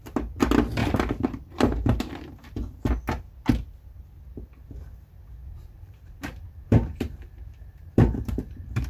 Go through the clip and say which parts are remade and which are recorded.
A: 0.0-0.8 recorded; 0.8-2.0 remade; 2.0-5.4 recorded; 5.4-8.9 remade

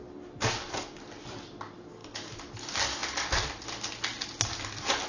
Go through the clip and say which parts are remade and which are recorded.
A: 0.0-5.1 recorded

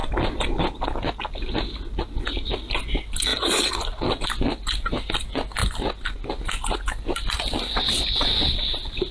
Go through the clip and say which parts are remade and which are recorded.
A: 0.0-9.1 recorded

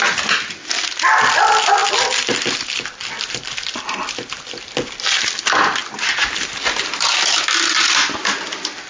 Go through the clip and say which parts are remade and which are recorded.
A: 0.0-1.8 recorded; 1.8-4.9 remade; 4.9-5.8 recorded; 5.8-6.6 remade; 6.6-8.9 recorded

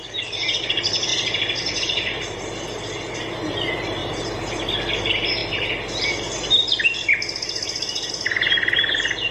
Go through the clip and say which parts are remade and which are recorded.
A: 0.0-1.1 recorded; 1.1-2.2 remade; 2.2-9.3 recorded